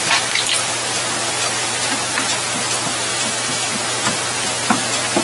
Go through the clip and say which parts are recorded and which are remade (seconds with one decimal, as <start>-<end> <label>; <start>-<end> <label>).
0.0-3.1 recorded; 3.1-3.7 remade; 3.7-5.2 recorded